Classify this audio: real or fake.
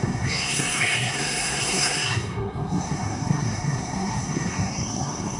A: fake